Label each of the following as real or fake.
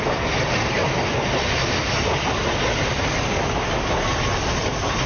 real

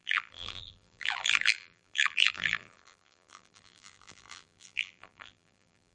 fake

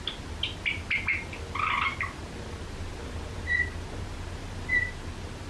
real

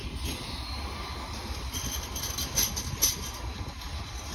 real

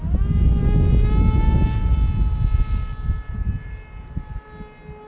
real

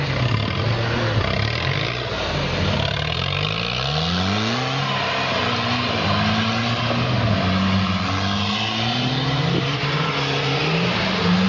real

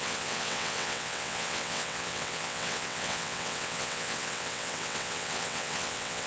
fake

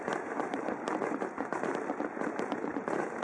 fake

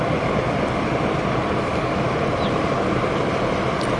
real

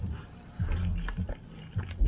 real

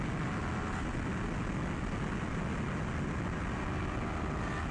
real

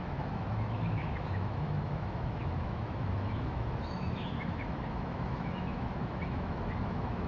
fake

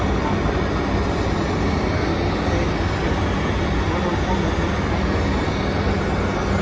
real